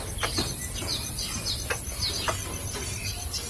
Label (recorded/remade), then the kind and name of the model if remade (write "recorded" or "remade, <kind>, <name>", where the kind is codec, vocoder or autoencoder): recorded